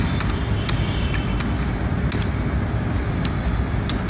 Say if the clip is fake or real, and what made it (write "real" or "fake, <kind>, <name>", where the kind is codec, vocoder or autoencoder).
real